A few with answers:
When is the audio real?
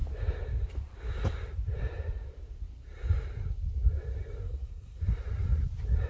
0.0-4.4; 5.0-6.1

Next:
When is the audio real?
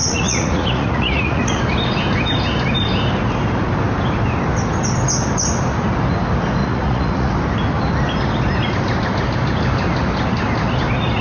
1.6-6.6; 7.3-11.2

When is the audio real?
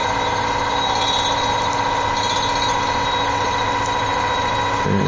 0.0-5.1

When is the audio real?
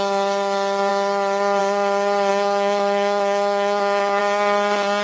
0.0-2.3; 4.2-5.0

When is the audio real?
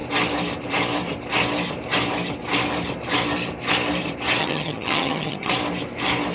0.0-4.4; 5.5-6.3